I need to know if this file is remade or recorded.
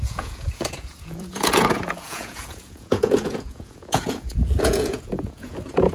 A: remade